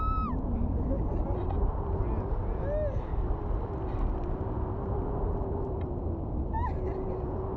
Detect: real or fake real